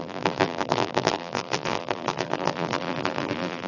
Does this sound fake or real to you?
fake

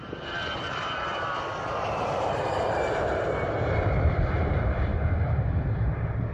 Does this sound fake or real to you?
fake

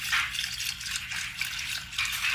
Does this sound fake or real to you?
real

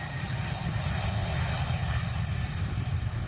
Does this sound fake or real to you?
real